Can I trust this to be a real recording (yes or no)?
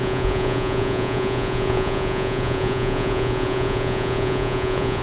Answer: no